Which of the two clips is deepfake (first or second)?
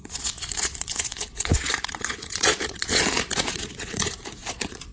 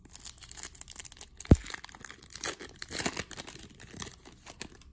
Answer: first